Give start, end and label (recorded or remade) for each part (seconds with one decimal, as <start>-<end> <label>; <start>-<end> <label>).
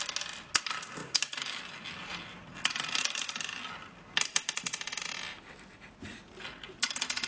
0.0-1.0 recorded; 1.0-1.6 remade; 1.6-7.3 recorded